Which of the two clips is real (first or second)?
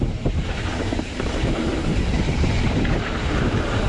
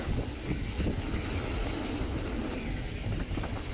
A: second